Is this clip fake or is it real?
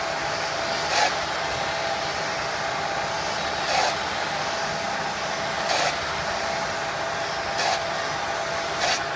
real